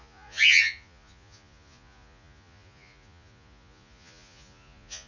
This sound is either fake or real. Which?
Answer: fake